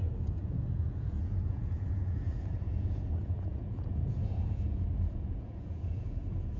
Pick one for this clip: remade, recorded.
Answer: remade